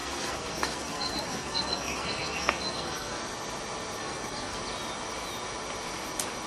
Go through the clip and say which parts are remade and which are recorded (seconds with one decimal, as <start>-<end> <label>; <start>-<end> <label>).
0.0-3.2 remade; 3.2-4.0 recorded; 4.0-4.6 remade; 4.6-6.5 recorded